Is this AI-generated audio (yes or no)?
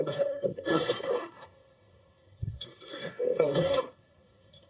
yes